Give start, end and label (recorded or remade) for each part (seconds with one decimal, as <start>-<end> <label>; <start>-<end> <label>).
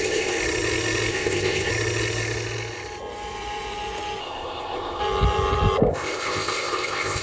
0.0-0.4 remade; 0.4-1.1 recorded; 1.1-1.7 remade; 1.7-4.2 recorded; 4.2-5.0 remade; 5.0-5.9 recorded; 5.9-7.2 remade